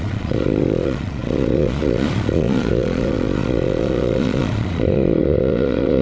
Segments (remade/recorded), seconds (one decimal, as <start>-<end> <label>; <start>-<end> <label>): 0.0-6.0 remade